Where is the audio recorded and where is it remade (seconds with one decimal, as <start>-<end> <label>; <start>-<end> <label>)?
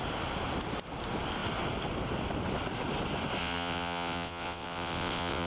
0.0-3.4 recorded; 3.4-5.5 remade